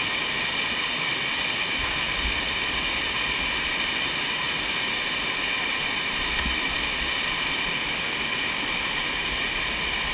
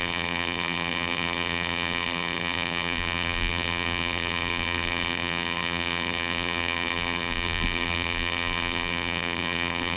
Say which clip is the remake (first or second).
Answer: second